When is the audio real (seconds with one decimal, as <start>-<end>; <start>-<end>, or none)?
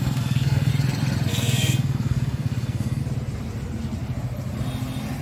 0.7-1.3; 3.0-5.2